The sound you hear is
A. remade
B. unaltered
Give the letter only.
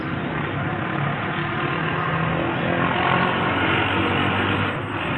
B